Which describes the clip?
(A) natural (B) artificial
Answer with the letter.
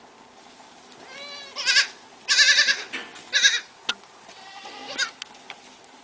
A